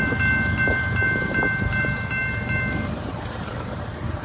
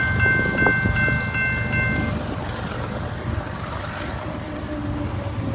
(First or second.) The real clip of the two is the second